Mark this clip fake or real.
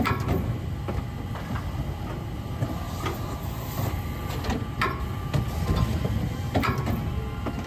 real